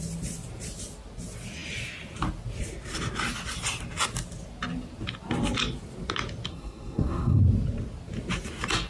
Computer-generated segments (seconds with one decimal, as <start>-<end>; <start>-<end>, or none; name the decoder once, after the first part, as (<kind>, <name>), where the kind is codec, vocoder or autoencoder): 6.5-7.4 (codec, SNAC)